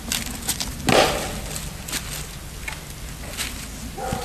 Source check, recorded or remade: recorded